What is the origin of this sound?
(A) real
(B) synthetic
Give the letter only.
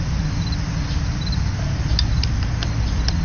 A